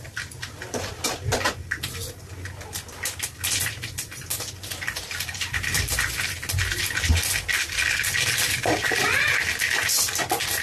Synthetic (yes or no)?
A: no